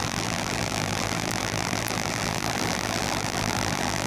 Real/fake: fake